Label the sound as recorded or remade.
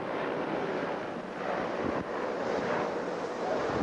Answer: recorded